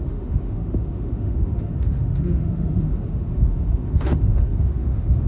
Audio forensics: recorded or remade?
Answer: remade